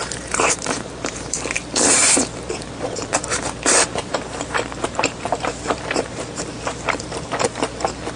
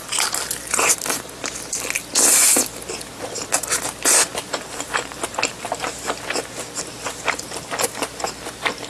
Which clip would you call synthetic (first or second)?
first